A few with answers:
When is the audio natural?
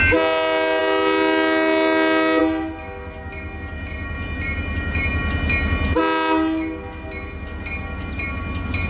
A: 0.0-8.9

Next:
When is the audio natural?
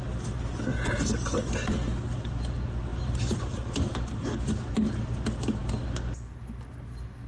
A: 0.0-2.9; 4.5-7.3